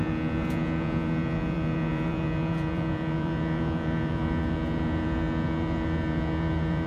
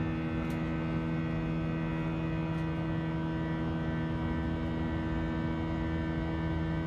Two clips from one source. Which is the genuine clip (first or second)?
second